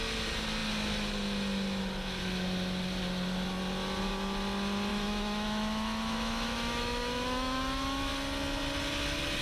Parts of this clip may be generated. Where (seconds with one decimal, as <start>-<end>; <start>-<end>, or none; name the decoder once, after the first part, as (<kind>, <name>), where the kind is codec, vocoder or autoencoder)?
4.9-8.1 (autoencoder, DAC-VAE)